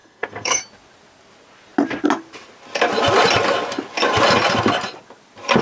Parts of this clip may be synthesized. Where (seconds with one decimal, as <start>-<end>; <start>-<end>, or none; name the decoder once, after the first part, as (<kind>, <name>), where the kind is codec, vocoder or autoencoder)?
0.0-0.6 (codec, SNAC)